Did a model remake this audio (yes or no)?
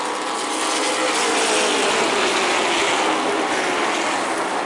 no